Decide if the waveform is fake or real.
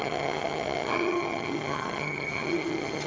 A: fake